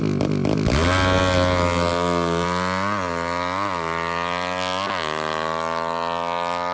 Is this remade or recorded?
recorded